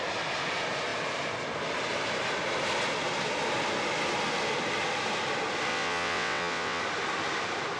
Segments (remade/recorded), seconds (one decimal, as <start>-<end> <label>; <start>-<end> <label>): 0.0-5.7 recorded; 5.7-6.8 remade; 6.8-7.8 recorded